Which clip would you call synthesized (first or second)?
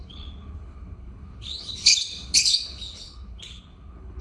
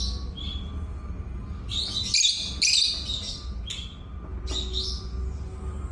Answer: first